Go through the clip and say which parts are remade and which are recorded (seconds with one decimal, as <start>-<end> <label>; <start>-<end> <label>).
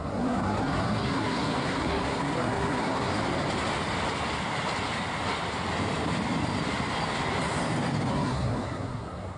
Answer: 0.0-3.1 remade; 3.1-8.1 recorded; 8.1-9.4 remade